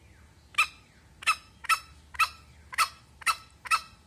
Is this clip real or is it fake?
real